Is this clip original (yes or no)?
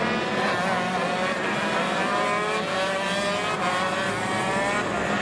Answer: yes